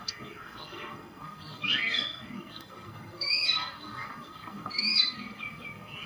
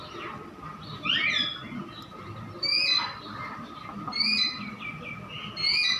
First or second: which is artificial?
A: first